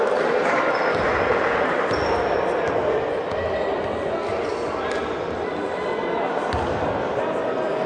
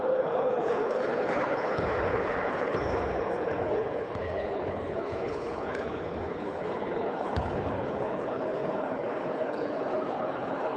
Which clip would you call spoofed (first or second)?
second